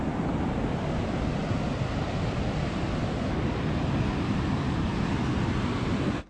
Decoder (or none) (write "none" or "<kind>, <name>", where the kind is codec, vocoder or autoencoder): none